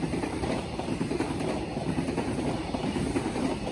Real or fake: fake